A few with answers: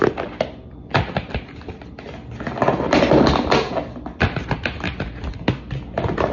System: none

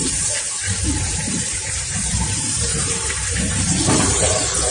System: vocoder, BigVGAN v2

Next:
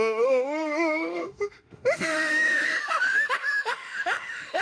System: autoencoder, DAC-VAE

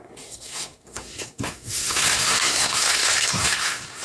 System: codec, SNAC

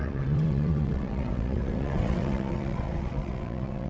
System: vocoder, WaveNeXt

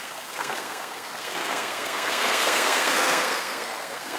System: codec, SNAC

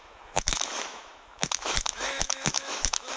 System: autoencoder, DAC-VAE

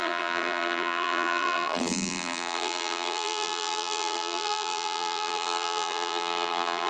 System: vocoder, BigVGAN v2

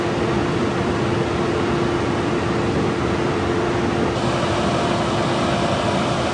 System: none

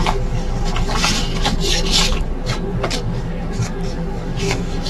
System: codec, DAC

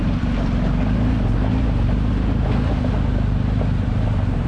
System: none